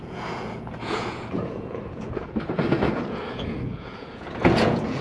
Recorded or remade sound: remade